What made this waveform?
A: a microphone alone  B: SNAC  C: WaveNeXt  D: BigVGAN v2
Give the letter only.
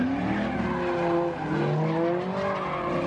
A